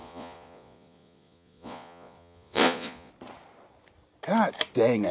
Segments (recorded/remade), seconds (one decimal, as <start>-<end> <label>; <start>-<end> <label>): 0.0-3.1 remade; 3.1-5.1 recorded

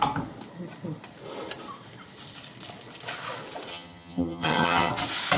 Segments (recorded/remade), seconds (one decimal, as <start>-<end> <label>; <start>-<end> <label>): 0.0-3.7 recorded; 3.7-4.9 remade; 4.9-5.4 recorded

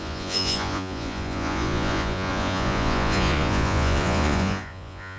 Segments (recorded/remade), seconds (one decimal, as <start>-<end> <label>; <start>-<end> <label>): 0.0-5.2 remade